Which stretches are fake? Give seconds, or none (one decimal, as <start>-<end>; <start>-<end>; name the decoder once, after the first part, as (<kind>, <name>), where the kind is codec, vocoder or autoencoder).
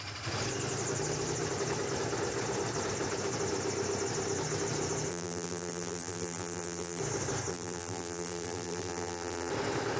5.1-7.0 (vocoder, BigVGAN v2); 7.5-9.5